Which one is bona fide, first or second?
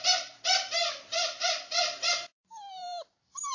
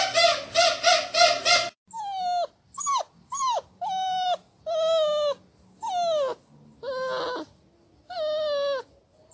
second